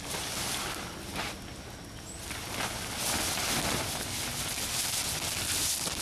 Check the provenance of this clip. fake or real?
real